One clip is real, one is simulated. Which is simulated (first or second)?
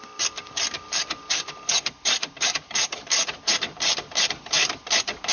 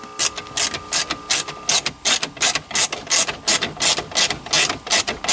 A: first